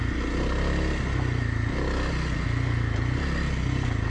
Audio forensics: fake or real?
real